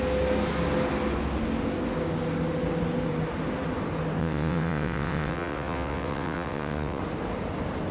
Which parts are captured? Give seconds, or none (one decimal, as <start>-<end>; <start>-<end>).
0.0-4.2; 7.0-7.9